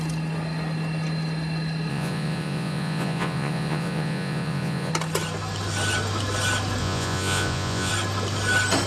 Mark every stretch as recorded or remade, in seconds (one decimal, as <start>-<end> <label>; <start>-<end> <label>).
0.0-1.9 recorded; 1.9-4.9 remade; 4.9-6.8 recorded; 6.8-7.9 remade; 7.9-8.9 recorded